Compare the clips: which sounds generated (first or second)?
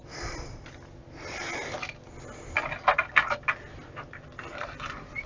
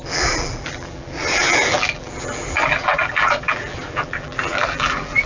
second